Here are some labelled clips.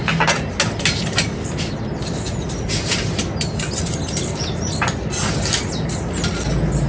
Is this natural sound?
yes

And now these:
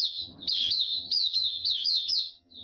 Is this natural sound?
no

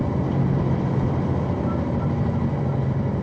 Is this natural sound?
yes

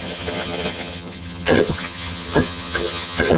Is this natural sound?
no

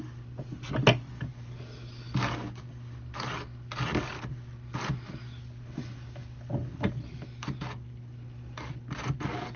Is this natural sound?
yes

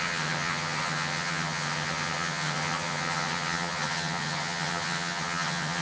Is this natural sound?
no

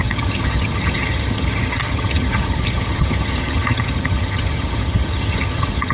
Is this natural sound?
no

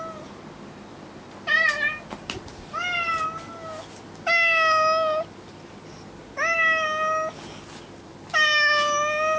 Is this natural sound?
yes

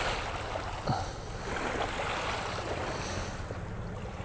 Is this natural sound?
yes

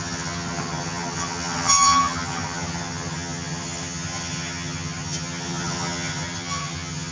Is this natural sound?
no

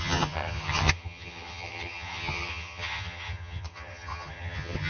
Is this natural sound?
no